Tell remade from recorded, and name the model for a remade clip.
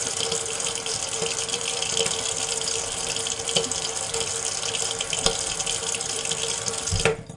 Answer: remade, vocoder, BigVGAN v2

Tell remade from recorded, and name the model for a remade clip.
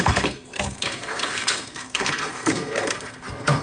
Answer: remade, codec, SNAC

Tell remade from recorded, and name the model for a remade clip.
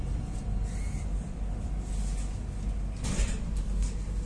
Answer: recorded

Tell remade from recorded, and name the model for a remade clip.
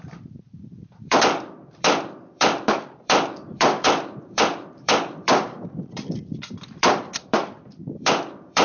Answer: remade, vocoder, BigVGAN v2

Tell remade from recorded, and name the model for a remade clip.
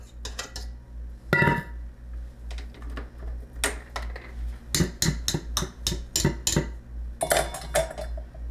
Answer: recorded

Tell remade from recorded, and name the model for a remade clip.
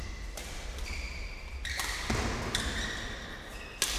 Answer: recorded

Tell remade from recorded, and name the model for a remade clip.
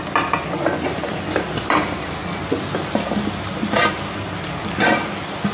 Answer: recorded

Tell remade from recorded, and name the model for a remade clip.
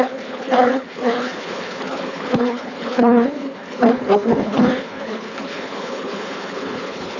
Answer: remade, codec, HILCodec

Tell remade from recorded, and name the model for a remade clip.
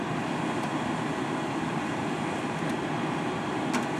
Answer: remade, vocoder, BigVGAN v2